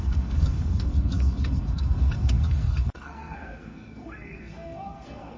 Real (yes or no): no